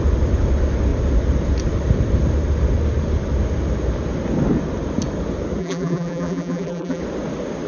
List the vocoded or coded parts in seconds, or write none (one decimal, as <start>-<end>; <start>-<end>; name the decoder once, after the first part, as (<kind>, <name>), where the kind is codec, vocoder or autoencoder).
5.6-7.0 (vocoder, BigVGAN v2)